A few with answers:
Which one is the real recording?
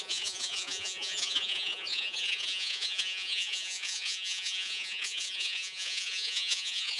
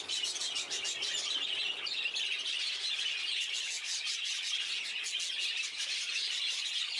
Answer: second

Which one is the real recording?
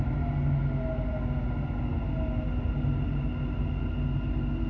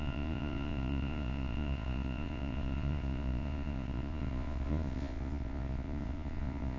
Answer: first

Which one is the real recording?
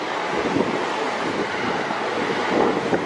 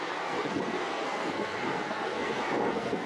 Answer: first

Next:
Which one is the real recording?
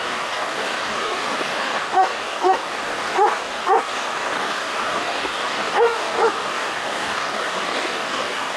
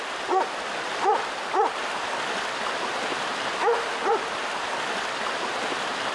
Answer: second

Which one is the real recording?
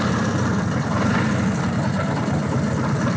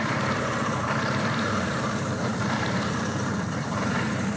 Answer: first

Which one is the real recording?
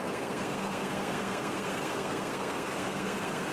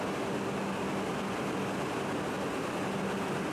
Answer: second